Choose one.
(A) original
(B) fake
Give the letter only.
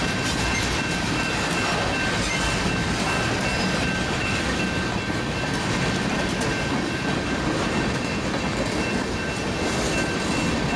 A